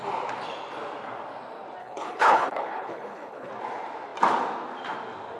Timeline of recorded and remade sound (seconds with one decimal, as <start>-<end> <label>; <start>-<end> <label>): 0.0-1.8 recorded; 1.8-3.5 remade; 3.5-5.4 recorded